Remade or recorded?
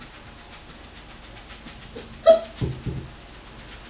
recorded